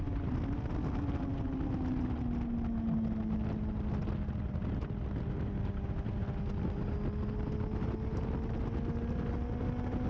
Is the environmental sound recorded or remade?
recorded